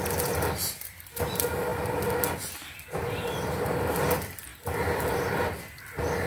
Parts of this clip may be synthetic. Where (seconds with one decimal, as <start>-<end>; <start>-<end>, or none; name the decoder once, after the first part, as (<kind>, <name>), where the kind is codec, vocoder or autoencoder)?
0.0-1.7 (vocoder, BigVGAN v2); 2.5-4.5; 5.0-6.3